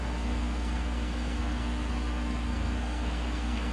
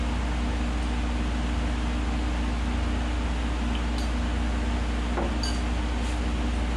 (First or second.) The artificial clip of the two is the first